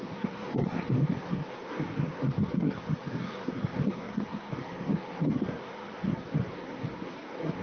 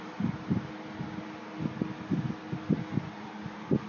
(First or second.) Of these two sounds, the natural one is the second